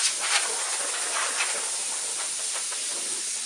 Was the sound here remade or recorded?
recorded